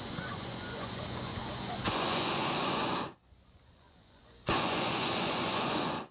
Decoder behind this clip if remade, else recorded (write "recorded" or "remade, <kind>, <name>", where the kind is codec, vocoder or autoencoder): remade, vocoder, Vocos